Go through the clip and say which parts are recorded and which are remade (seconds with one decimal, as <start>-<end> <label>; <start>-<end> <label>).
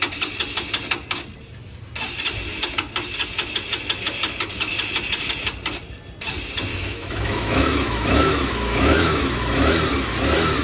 0.0-6.7 recorded; 6.7-9.7 remade; 9.7-10.6 recorded